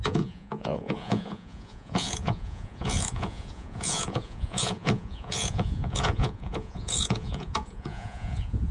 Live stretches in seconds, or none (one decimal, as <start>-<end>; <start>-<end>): none